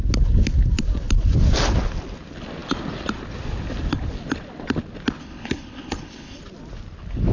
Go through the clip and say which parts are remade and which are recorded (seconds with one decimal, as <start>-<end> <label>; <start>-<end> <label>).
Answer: 0.0-5.2 recorded; 5.2-6.4 remade; 6.4-7.3 recorded